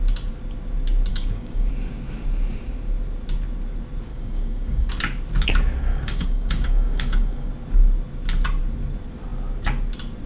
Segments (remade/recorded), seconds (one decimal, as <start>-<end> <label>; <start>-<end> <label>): 0.0-1.1 recorded; 1.1-1.7 remade; 1.7-4.1 recorded; 4.1-4.9 remade; 4.9-5.9 recorded; 5.9-7.5 remade; 7.5-10.3 recorded